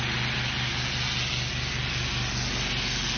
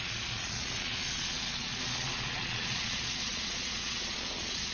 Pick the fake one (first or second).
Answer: second